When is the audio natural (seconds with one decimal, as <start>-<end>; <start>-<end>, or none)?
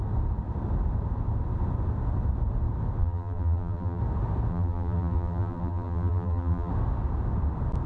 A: 0.0-3.0; 4.0-4.5; 6.7-7.9